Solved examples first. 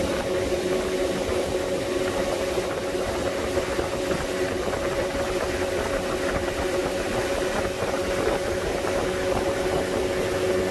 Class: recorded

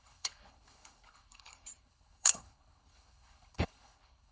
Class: remade